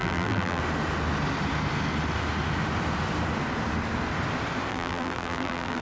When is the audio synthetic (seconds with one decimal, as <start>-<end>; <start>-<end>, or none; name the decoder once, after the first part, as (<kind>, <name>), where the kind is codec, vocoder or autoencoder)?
0.0-0.6 (vocoder, BigVGAN v2); 4.7-5.8